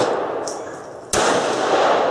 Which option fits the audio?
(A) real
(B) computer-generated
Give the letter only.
A